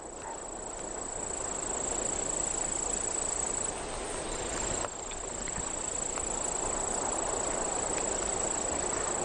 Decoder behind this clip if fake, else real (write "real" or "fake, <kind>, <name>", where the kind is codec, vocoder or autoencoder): real